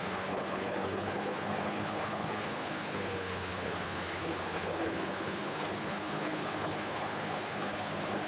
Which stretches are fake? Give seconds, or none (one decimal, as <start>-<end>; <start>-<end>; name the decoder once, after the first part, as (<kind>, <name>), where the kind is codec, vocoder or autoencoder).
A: 0.0-8.3 (codec, HILCodec)